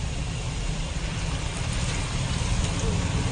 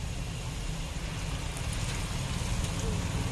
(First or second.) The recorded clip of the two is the second